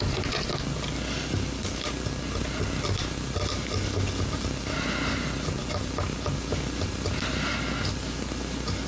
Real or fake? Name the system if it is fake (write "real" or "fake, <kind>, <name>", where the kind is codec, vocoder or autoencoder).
real